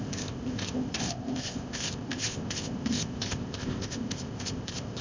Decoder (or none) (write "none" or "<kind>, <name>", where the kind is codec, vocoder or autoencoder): codec, ZipCodec